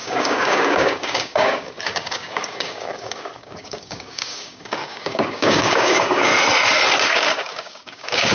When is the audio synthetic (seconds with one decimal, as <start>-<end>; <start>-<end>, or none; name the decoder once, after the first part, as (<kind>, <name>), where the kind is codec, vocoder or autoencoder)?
0.0-6.3 (codec, DAC); 7.1-8.3